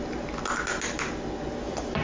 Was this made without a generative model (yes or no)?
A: yes